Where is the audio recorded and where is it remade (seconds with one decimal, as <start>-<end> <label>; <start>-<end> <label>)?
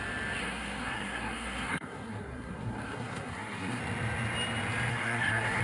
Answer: 0.0-0.4 recorded; 0.4-3.8 remade; 3.8-4.9 recorded; 4.9-5.6 remade